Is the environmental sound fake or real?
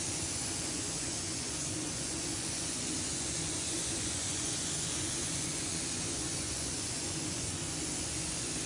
fake